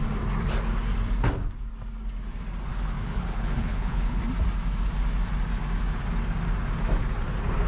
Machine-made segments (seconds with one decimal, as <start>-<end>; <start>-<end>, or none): 2.7-4.2